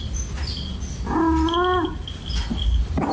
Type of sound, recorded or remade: recorded